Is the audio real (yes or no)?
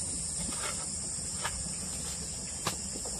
yes